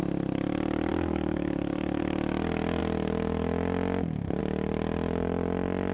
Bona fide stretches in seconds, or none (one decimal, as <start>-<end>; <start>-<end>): 0.0-0.9; 2.0-5.9